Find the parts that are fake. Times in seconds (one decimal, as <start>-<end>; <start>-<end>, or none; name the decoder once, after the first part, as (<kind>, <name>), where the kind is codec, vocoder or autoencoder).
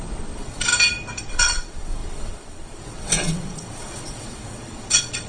0.0-0.7 (vocoder, WaveNeXt); 1.3-5.3